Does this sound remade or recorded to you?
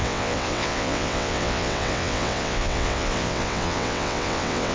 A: remade